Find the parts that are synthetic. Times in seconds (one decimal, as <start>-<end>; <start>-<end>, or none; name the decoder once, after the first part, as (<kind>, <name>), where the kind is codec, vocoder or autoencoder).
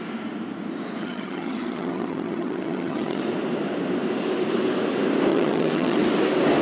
1.0-3.2 (vocoder, HiFi-GAN); 5.3-6.0